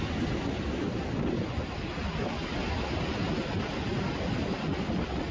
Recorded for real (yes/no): yes